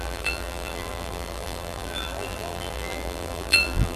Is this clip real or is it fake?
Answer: fake